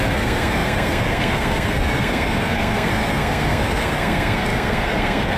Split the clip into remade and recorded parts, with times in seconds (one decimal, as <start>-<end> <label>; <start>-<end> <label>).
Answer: 0.0-5.4 remade